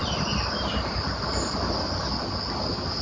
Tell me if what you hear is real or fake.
real